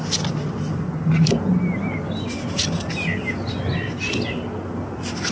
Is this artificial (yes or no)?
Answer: no